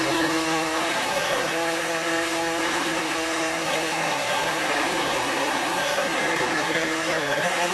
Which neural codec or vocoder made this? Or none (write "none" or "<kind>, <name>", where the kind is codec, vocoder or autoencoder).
codec, SNAC